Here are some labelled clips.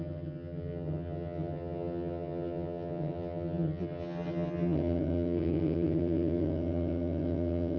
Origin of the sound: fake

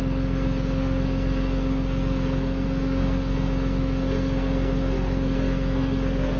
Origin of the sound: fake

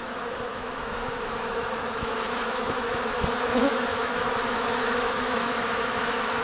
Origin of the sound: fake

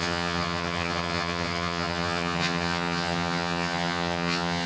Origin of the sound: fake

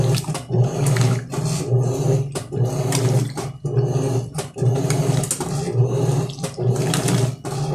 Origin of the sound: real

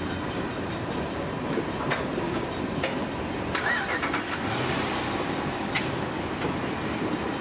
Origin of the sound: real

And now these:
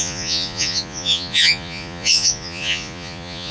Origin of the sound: fake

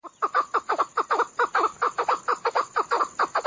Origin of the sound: real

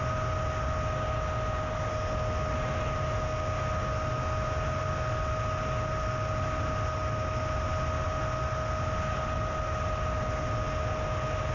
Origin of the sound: real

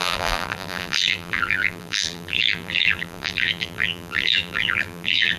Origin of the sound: fake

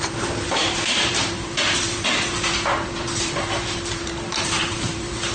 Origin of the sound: fake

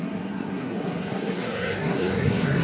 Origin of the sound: fake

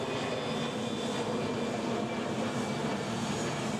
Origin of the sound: real